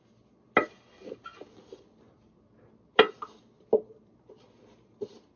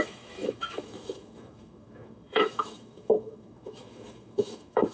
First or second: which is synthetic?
second